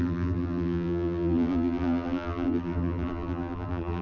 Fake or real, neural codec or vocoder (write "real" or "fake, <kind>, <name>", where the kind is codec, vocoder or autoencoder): fake, vocoder, BigVGAN v2